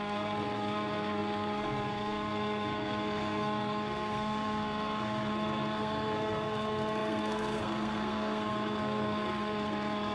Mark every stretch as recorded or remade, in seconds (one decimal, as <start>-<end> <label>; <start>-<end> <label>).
0.0-10.1 remade